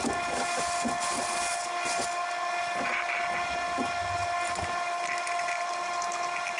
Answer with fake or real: real